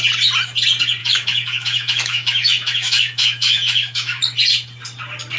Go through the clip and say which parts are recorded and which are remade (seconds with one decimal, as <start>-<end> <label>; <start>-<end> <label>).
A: 0.0-1.0 recorded; 1.0-4.2 remade; 4.2-5.4 recorded